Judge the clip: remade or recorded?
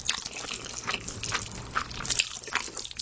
recorded